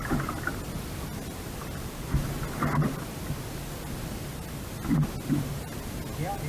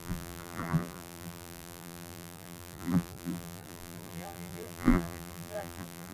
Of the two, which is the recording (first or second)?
first